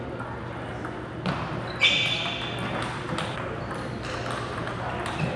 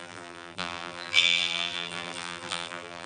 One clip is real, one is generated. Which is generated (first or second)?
second